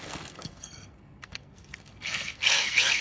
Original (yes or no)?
no